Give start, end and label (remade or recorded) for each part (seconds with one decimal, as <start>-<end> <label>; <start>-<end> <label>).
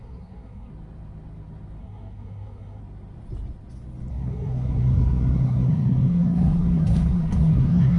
0.0-0.7 remade; 0.7-1.8 recorded; 1.8-2.8 remade; 2.8-4.1 recorded; 4.1-8.0 remade